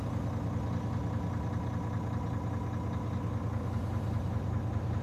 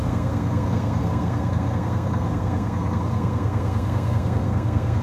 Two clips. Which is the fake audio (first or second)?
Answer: second